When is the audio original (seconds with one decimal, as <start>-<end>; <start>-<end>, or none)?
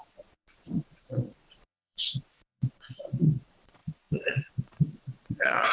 none